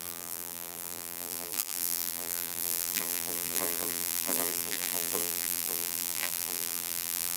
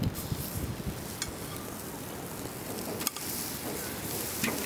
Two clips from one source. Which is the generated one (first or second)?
first